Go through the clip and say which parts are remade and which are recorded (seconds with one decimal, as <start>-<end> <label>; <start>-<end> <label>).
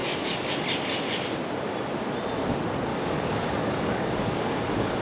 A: 0.0-0.5 remade; 0.5-2.9 recorded; 2.9-5.0 remade